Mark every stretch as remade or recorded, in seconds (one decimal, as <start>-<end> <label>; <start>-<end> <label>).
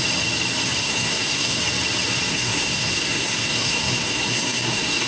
0.0-0.8 recorded; 0.8-1.6 remade; 1.6-2.3 recorded; 2.3-5.1 remade